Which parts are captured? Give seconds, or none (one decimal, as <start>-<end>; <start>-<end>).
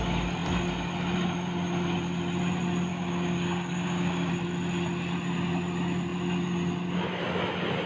0.0-2.9; 4.3-7.9